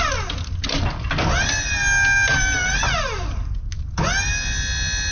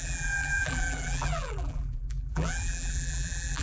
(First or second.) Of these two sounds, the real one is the first